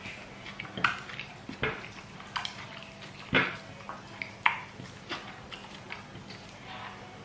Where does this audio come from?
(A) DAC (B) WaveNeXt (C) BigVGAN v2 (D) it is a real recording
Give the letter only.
D